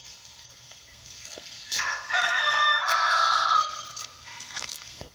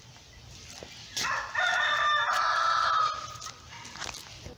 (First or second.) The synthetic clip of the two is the first